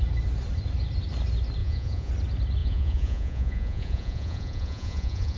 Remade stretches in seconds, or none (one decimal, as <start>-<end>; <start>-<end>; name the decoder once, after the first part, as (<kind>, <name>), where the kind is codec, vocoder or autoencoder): 1.6-2.1 (vocoder, Vocos); 2.6-5.4